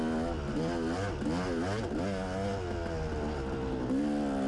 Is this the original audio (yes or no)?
yes